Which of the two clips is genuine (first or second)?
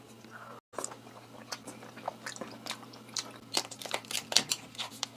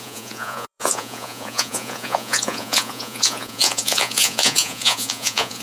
first